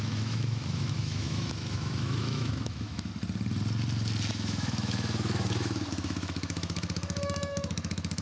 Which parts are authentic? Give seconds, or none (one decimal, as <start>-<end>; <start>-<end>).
3.1-4.3